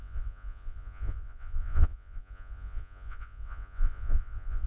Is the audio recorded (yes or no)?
no